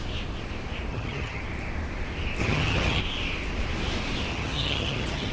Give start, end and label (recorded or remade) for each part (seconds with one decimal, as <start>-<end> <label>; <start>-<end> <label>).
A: 0.0-0.9 recorded; 0.9-1.4 remade; 1.4-2.4 recorded; 2.4-3.0 remade; 3.0-4.3 recorded; 4.3-5.3 remade